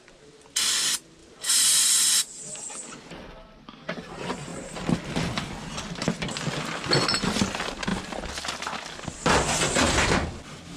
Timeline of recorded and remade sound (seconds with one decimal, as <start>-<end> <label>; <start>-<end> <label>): 0.0-1.2 recorded; 1.2-1.8 remade; 1.8-10.8 recorded

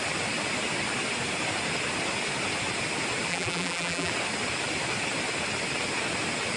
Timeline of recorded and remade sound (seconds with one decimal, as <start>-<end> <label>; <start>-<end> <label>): 0.0-3.3 recorded; 3.3-4.1 remade; 4.1-6.6 recorded

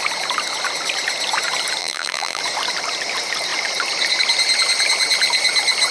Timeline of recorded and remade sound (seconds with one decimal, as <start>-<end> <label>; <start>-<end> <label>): 0.0-1.8 recorded; 1.8-2.4 remade; 2.4-5.9 recorded